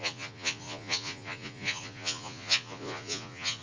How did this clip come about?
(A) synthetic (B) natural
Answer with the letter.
A